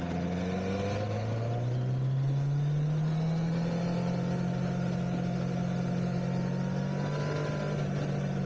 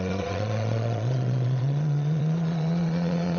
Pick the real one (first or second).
first